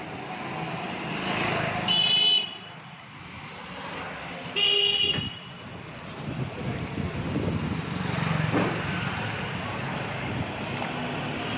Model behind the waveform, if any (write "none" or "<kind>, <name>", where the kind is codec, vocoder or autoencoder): none